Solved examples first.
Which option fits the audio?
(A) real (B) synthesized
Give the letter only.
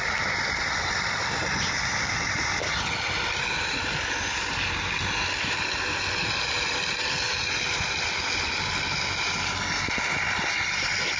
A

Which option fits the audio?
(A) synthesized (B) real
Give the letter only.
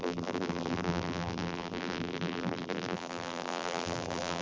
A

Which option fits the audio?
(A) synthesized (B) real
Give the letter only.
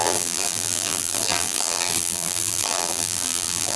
A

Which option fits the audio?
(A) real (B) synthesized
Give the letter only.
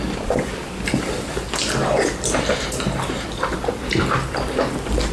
B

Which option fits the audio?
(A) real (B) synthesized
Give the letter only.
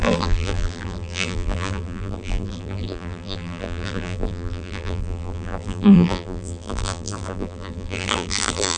B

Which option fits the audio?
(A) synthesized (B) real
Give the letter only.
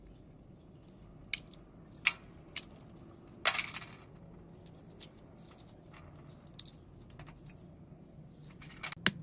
B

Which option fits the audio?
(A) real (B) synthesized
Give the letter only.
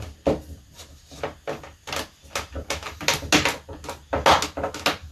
A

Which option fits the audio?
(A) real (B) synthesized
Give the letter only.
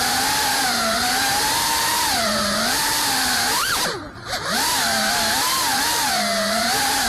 B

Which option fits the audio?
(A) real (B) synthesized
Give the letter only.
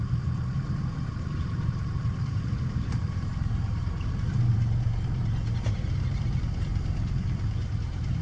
B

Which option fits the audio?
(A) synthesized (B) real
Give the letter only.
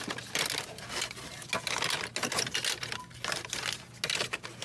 B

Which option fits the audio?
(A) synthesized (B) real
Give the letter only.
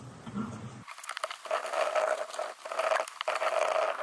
B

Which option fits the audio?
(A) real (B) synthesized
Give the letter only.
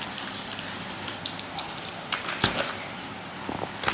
A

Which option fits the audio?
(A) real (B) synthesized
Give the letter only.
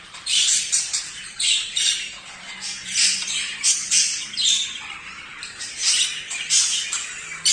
B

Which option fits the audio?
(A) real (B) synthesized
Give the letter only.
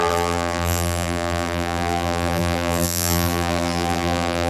B